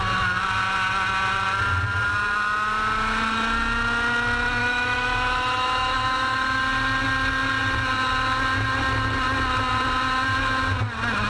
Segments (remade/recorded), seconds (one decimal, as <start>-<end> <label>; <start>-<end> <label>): 0.0-4.6 recorded; 4.6-6.6 remade; 6.6-11.3 recorded

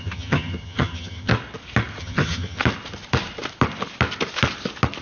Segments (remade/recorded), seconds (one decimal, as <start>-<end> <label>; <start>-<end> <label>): 0.0-1.3 remade; 1.3-2.0 recorded; 2.0-2.6 remade; 2.6-5.0 recorded

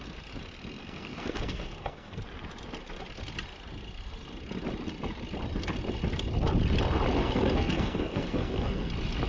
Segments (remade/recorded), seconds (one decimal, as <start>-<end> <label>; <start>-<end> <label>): 0.0-0.8 recorded; 0.8-2.2 remade; 2.2-7.2 recorded; 7.2-8.9 remade; 8.9-9.3 recorded

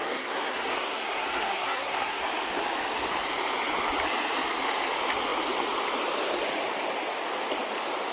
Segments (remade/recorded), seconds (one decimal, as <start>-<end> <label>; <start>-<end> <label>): 0.0-2.2 remade; 2.2-8.1 recorded

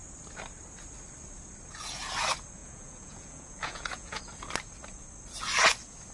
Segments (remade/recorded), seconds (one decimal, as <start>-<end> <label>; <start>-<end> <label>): 0.0-2.6 recorded; 2.6-4.2 remade; 4.2-6.1 recorded

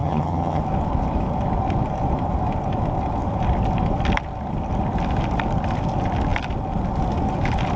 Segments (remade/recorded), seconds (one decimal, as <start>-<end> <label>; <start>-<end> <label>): 0.0-0.6 remade; 0.6-7.8 recorded

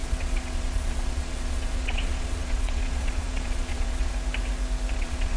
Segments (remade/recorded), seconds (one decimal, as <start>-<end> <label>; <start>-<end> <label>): 0.0-4.1 remade; 4.1-4.9 recorded; 4.9-5.4 remade

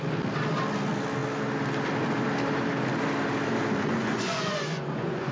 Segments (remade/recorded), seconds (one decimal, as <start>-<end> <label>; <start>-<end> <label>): 0.0-4.0 recorded; 4.0-5.3 remade